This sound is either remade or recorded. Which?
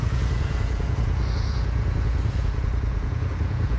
remade